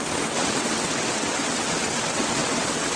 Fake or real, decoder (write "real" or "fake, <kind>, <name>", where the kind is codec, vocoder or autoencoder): fake, vocoder, WaveNeXt